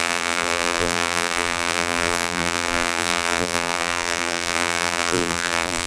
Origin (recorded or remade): remade